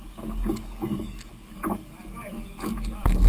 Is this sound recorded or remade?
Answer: remade